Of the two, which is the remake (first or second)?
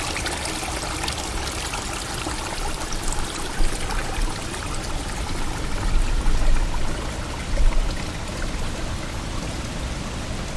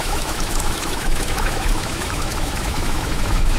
second